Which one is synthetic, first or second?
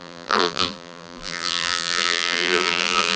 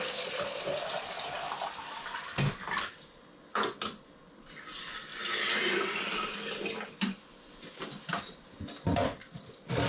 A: first